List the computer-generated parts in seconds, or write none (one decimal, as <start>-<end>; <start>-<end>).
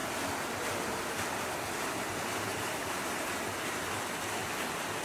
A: none